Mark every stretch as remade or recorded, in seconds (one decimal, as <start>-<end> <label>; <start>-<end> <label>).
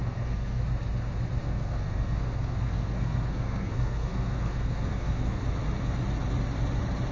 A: 0.0-0.6 remade; 0.6-1.4 recorded; 1.4-5.4 remade; 5.4-7.1 recorded